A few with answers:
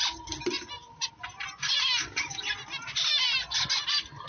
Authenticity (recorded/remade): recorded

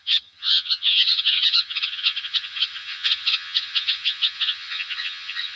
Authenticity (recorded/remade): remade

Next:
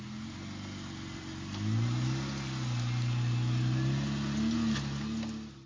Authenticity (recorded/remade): recorded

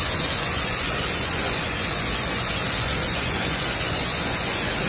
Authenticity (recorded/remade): remade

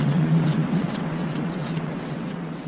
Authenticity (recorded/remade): remade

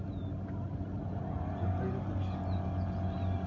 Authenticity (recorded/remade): recorded